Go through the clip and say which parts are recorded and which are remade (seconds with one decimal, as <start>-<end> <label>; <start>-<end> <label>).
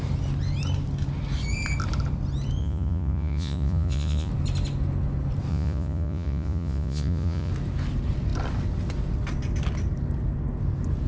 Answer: 0.0-2.6 recorded; 2.6-4.3 remade; 4.3-5.5 recorded; 5.5-7.5 remade; 7.5-11.1 recorded